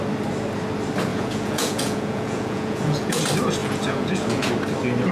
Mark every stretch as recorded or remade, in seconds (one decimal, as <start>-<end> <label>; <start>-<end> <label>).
0.0-1.1 recorded; 1.1-3.2 remade; 3.2-3.6 recorded; 3.6-4.5 remade; 4.5-5.1 recorded